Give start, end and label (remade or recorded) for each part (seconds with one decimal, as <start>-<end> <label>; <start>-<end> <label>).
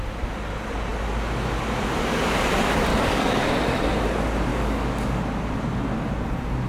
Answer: 0.0-2.9 recorded; 2.9-3.5 remade; 3.5-4.5 recorded; 4.5-5.2 remade; 5.2-6.7 recorded